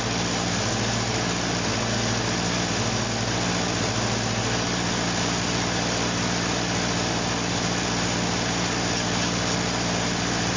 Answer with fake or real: real